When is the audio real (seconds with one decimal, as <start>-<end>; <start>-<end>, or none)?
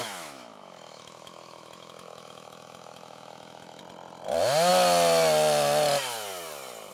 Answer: 3.8-6.9